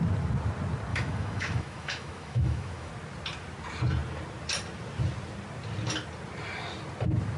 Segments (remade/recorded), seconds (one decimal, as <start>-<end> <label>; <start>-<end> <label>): 0.0-0.9 recorded; 0.9-2.9 remade; 2.9-7.4 recorded